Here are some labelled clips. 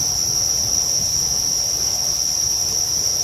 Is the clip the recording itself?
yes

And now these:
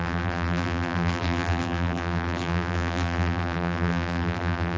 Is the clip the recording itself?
no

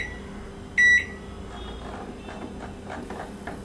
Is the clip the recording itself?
yes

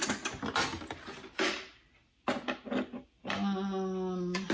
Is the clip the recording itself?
yes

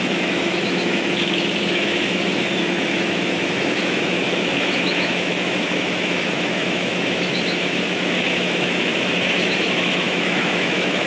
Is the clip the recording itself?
no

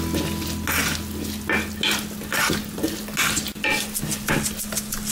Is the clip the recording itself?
yes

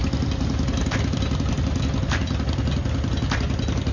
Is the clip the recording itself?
yes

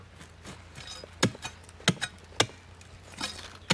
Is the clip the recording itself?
yes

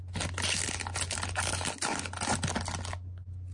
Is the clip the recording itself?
yes